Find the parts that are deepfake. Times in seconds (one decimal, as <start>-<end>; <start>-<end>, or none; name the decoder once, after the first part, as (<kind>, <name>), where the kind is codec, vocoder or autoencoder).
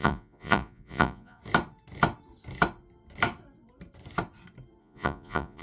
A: 0.0-1.4 (vocoder, Vocos); 4.8-5.6